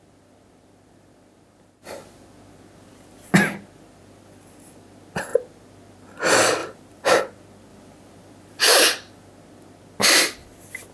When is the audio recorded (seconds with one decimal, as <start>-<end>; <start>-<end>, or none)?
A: 0.0-6.6; 7.2-7.7; 8.8-10.9